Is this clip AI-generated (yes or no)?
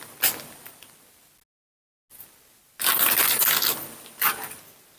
no